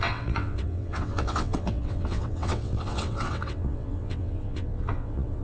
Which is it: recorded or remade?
remade